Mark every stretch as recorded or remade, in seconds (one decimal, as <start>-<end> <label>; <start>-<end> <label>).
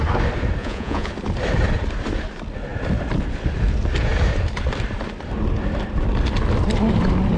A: 0.0-0.6 recorded; 0.6-1.1 remade; 1.1-7.4 recorded